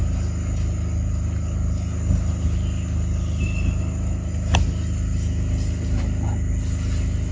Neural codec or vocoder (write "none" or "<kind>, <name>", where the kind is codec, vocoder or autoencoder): none